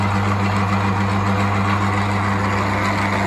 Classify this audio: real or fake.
real